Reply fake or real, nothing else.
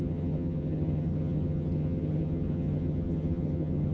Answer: fake